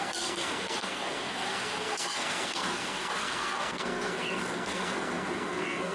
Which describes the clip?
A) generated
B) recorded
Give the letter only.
A